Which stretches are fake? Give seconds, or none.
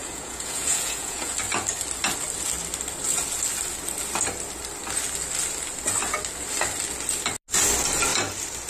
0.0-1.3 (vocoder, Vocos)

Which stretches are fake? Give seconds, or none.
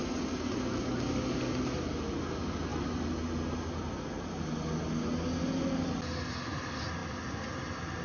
none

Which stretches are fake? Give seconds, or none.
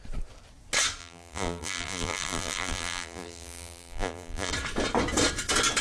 1.0-4.5 (vocoder, BigVGAN v2)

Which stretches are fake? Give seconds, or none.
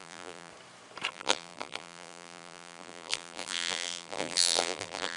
0.0-0.5 (vocoder, BigVGAN v2); 1.1-5.2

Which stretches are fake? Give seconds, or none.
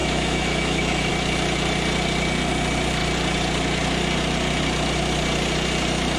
0.0-1.1 (autoencoder, DAC-VAE)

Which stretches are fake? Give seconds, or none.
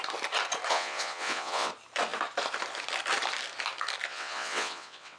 0.7-1.7 (vocoder, WaveNeXt); 4.1-5.2